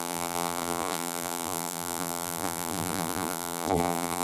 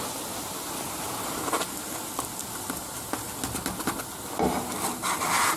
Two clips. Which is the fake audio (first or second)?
first